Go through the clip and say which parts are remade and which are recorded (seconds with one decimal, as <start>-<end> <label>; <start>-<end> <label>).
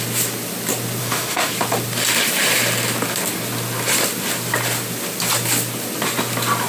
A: 0.0-1.0 recorded; 1.0-1.5 remade; 1.5-6.7 recorded